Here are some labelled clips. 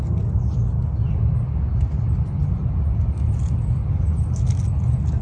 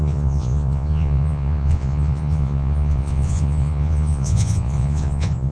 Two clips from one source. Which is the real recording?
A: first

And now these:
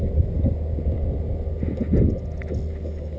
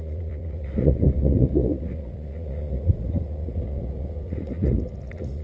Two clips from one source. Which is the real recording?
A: first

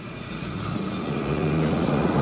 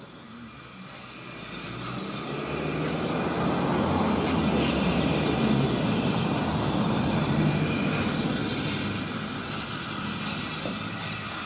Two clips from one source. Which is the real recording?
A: second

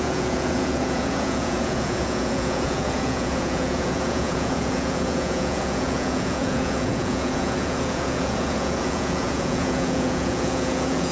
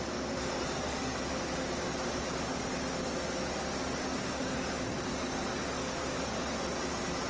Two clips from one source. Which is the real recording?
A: second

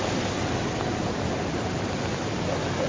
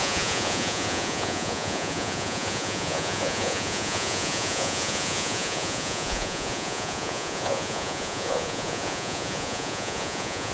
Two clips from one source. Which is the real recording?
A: first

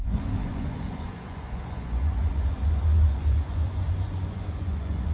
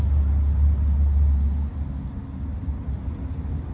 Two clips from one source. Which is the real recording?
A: second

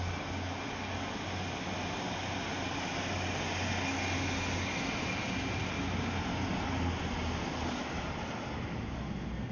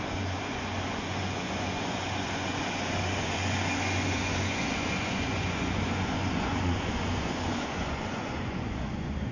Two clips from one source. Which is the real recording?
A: first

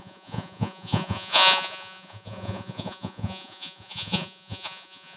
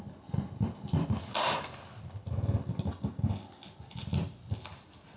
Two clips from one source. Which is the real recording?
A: second